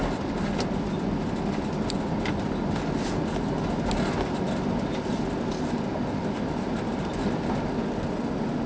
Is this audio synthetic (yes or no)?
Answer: no